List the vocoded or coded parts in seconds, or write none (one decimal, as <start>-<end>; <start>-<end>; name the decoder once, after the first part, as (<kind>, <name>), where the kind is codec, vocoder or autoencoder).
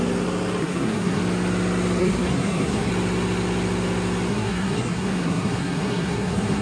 0.6-1.2 (codec, SNAC); 2.0-2.9; 4.3-6.6